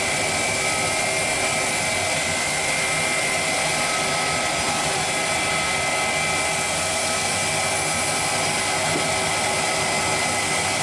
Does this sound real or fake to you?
real